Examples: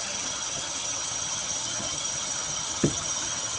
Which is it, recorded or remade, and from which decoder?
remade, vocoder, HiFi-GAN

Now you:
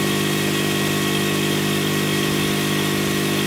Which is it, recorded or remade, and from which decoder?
recorded